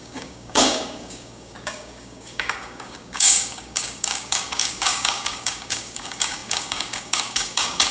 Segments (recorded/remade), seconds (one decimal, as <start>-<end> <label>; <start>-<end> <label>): 0.0-7.9 remade